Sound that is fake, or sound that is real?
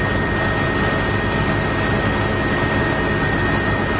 real